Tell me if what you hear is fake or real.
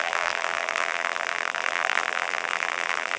fake